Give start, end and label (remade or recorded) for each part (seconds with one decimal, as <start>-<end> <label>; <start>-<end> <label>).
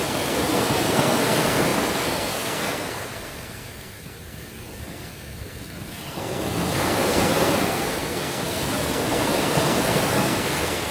0.0-10.9 remade